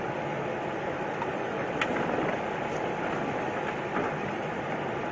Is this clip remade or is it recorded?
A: recorded